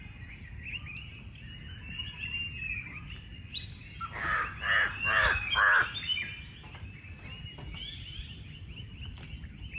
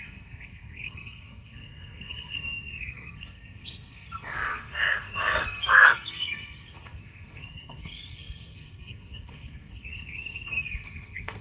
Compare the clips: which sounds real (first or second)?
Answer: first